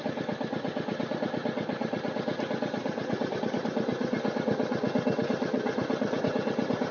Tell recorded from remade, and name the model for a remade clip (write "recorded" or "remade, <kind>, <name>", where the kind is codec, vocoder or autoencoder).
recorded